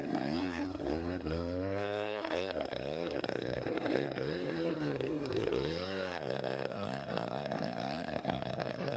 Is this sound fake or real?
fake